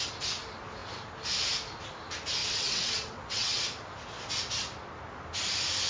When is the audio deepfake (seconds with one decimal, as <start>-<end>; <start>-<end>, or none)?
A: 2.4-3.6